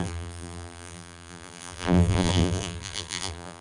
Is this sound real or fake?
fake